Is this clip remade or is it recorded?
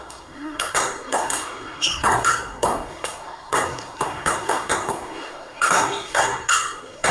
remade